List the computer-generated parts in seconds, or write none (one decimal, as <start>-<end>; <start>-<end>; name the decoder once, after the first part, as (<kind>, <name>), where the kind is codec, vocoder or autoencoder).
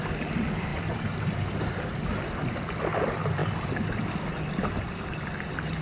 0.7-1.7 (vocoder, BigVGAN v2)